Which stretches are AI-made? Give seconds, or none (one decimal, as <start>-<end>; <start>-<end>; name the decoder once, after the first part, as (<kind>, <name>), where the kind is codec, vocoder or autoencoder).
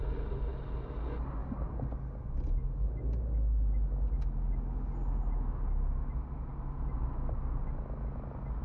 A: none